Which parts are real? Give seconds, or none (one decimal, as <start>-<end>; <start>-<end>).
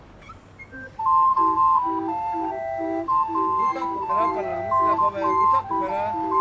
0.0-1.3; 4.1-6.4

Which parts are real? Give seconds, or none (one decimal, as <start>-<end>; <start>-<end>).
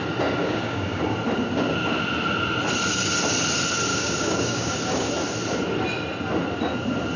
0.0-0.4; 1.0-3.9; 5.1-7.2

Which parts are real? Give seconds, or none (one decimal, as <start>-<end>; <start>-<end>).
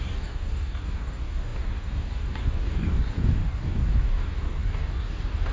none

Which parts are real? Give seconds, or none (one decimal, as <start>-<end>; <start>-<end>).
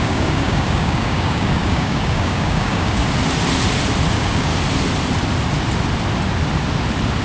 3.0-4.1; 4.5-7.2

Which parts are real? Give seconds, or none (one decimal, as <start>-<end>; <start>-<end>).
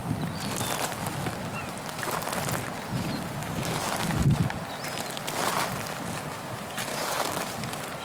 0.0-3.4; 4.1-6.9; 7.5-8.0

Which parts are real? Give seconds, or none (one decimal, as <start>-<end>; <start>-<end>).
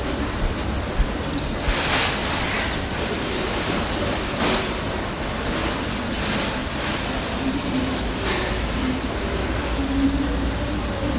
0.0-11.2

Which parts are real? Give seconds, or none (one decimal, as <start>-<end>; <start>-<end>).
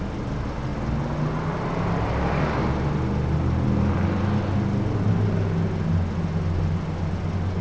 0.0-7.6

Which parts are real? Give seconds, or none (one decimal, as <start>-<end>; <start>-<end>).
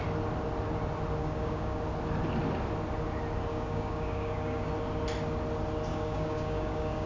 0.0-1.2; 1.8-3.5; 4.7-5.9